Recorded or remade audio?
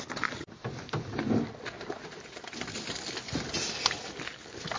recorded